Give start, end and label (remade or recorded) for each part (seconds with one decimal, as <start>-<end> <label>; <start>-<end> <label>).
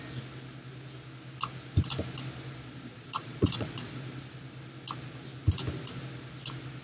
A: 0.0-2.9 recorded; 2.9-3.9 remade; 3.9-6.8 recorded